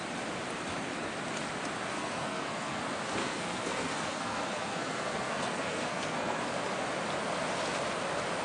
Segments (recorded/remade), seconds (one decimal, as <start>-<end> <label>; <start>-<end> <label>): 0.0-1.9 recorded; 1.9-2.8 remade; 2.8-3.2 recorded; 3.2-6.4 remade; 6.4-8.4 recorded